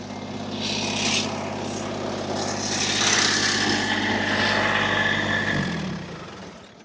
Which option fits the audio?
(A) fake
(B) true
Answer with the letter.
B